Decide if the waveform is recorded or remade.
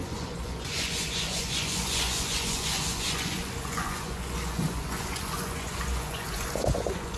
remade